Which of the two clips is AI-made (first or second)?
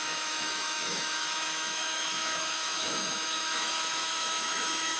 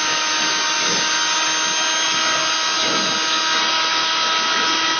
first